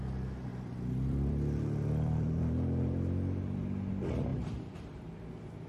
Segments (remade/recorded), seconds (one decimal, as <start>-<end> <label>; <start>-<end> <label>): 0.0-0.5 recorded; 0.5-3.9 remade; 3.9-4.3 recorded; 4.3-5.2 remade; 5.2-5.7 recorded